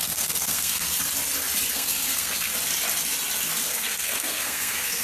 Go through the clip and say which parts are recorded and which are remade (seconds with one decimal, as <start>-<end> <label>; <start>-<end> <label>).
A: 0.0-0.9 remade; 0.9-1.7 recorded; 1.7-2.5 remade; 2.5-3.7 recorded; 3.7-5.0 remade